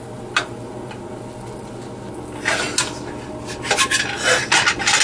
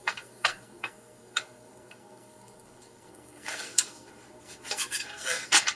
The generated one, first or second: second